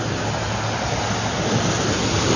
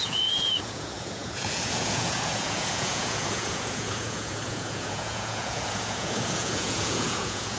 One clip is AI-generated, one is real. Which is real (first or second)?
first